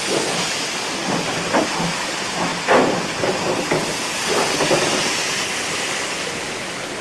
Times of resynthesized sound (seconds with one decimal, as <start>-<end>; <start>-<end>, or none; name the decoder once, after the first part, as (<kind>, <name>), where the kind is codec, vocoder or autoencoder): 2.5-3.5 (vocoder, BigVGAN v2)